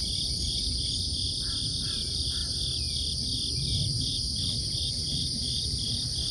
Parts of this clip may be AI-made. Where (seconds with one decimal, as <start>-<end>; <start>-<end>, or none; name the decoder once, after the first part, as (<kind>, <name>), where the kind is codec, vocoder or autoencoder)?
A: 0.0-2.4 (vocoder, BigVGAN v2); 4.0-6.3